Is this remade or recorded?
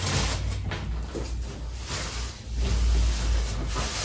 recorded